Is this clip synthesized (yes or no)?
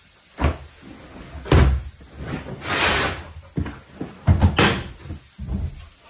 no